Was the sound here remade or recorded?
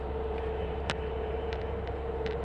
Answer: remade